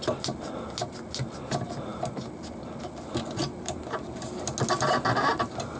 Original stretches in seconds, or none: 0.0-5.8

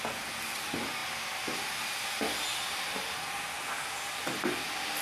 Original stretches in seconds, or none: 0.0-5.0

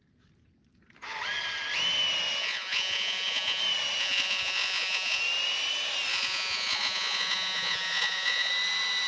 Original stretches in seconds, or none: 0.0-2.4; 3.6-4.0; 5.2-6.1; 8.5-9.1

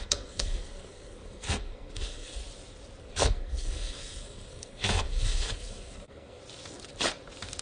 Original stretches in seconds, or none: 2.4-3.0; 6.4-7.6